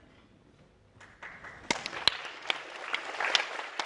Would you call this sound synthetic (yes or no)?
no